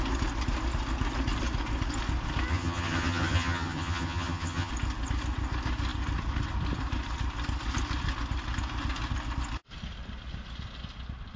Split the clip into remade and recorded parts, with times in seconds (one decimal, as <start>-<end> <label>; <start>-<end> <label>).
0.0-2.5 recorded; 2.5-4.7 remade; 4.7-11.4 recorded